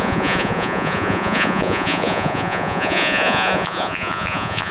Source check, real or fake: fake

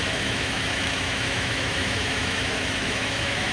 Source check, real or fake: fake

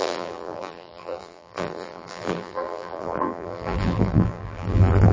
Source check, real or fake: fake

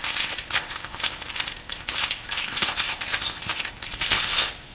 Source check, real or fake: fake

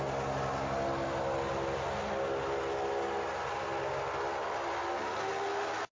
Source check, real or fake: real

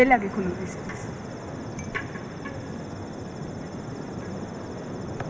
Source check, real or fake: real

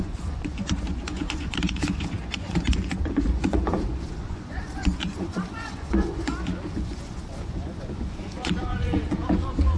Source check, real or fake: fake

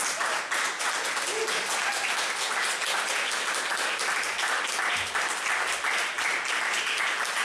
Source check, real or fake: real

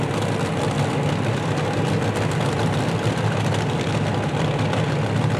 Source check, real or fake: real